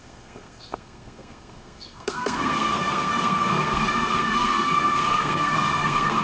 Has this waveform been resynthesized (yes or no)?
yes